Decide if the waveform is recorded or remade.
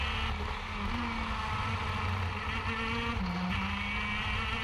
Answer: recorded